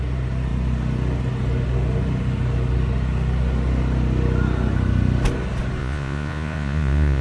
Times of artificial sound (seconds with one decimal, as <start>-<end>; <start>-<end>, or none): 5.8-7.2